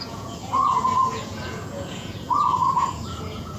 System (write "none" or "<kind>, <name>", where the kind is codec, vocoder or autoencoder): vocoder, Vocos